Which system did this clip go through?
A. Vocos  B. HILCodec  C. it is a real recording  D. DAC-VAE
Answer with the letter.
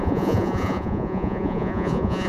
A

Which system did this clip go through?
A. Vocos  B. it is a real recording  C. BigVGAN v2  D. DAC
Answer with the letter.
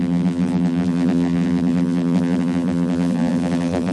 C